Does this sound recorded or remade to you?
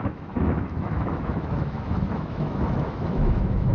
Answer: remade